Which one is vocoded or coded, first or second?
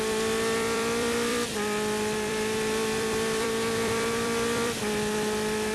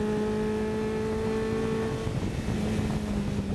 first